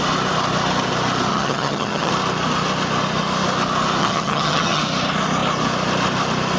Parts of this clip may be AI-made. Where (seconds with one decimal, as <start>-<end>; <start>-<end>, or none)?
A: 1.3-2.1; 4.0-4.8